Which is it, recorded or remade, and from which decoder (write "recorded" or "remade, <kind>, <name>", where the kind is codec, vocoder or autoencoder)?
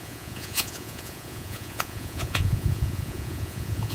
remade, vocoder, Vocos